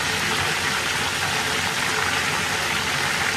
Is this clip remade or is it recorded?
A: recorded